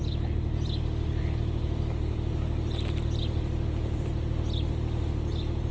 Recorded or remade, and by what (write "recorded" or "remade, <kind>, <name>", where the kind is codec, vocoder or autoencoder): recorded